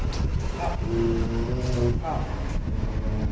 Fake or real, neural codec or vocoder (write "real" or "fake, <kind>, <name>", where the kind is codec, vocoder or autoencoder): real